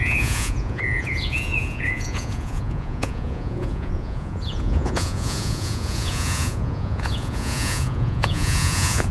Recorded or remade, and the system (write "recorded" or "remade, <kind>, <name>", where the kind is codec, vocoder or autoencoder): remade, vocoder, Vocos